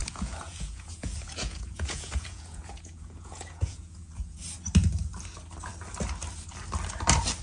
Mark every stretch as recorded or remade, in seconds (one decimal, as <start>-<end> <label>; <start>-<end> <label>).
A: 0.0-4.4 remade; 4.4-7.4 recorded